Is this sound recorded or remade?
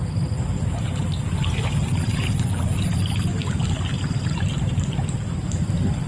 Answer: recorded